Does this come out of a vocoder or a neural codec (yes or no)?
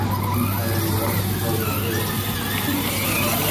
no